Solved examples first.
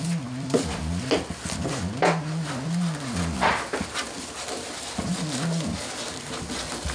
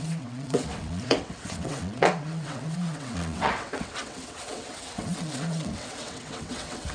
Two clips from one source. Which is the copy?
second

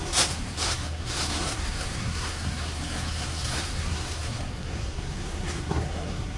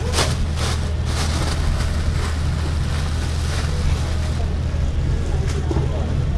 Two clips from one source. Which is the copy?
first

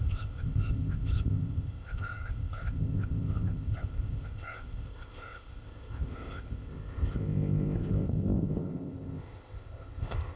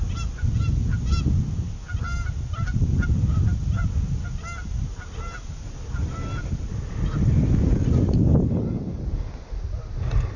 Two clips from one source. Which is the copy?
first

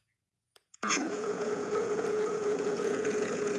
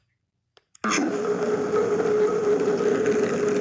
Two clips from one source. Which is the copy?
first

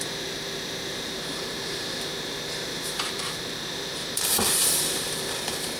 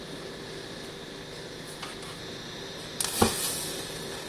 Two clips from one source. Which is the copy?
first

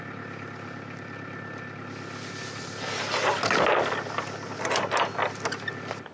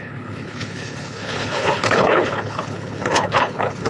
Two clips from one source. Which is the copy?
second